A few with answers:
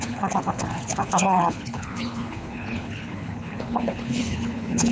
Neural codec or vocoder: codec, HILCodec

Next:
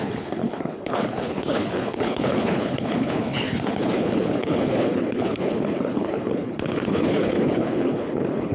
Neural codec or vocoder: codec, HILCodec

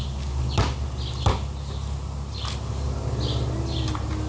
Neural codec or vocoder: none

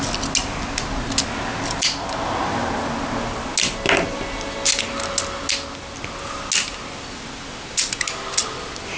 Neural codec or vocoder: none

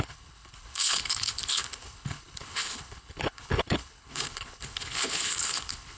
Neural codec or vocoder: codec, HILCodec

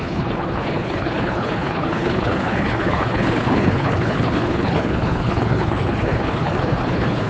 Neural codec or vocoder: codec, HILCodec